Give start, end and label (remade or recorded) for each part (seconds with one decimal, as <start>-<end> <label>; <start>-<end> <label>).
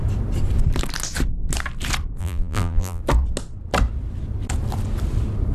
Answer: 0.0-2.2 recorded; 2.2-3.0 remade; 3.0-5.5 recorded